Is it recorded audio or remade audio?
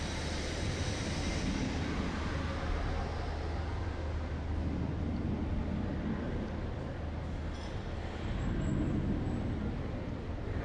recorded